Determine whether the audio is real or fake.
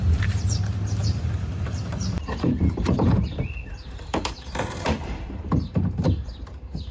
fake